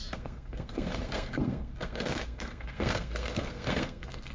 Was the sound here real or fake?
fake